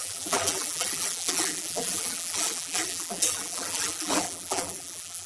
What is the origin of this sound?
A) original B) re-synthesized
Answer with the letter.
B